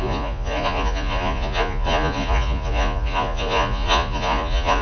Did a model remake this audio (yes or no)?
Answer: yes